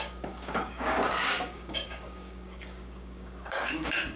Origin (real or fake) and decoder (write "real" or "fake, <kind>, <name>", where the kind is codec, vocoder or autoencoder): fake, codec, DAC